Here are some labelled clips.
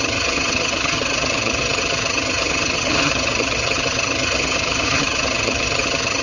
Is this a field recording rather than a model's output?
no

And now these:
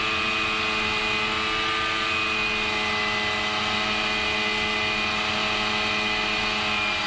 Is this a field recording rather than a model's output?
yes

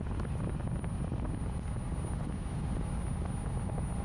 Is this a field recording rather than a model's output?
yes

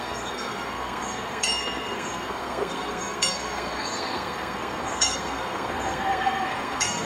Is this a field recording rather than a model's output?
no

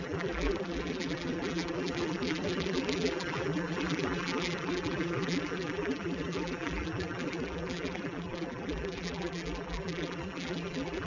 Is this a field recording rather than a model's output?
no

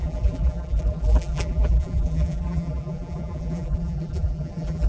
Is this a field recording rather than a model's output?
no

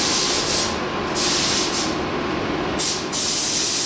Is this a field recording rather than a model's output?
yes